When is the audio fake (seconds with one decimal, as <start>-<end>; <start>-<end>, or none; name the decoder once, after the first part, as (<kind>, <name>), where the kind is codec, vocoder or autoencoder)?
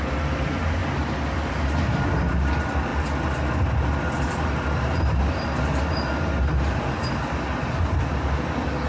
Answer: none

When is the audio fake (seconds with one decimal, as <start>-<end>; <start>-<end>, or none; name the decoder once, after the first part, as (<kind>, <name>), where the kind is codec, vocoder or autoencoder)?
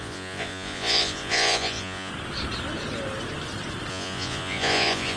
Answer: 0.0-2.1 (vocoder, Vocos); 3.9-5.2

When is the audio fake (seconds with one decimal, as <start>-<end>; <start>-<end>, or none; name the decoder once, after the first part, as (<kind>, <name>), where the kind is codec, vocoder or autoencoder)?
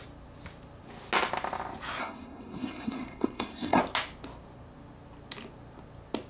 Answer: 2.0-3.8 (codec, SNAC)